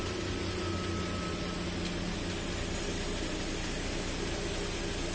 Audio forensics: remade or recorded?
recorded